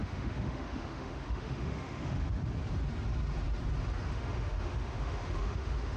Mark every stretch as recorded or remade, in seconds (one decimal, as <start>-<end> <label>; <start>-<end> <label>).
0.0-2.4 remade; 2.4-4.1 recorded; 4.1-6.0 remade